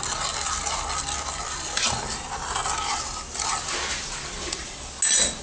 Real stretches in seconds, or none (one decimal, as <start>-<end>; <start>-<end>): 0.0-5.4